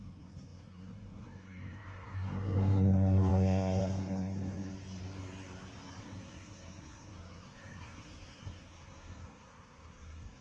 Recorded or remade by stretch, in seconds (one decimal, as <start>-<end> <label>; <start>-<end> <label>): 0.0-4.7 remade; 4.7-6.0 recorded; 6.0-10.4 remade